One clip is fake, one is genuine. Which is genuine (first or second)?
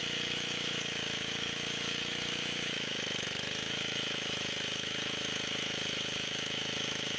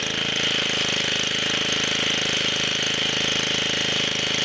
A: second